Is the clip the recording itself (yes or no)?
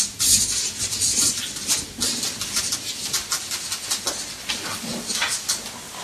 yes